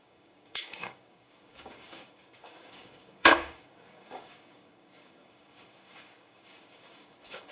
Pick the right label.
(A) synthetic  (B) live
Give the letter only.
A